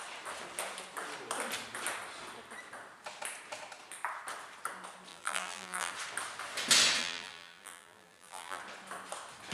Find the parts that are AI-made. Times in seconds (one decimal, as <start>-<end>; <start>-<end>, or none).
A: 5.1-5.9; 7.0-8.6